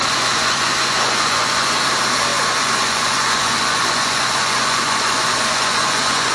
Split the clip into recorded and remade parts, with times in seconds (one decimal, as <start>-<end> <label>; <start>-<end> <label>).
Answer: 0.0-1.8 remade; 1.8-2.3 recorded; 2.3-6.3 remade